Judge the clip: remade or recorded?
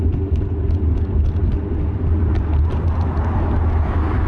recorded